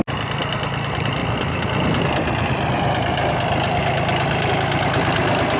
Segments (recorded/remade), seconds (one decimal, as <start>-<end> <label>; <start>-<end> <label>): 0.0-5.6 recorded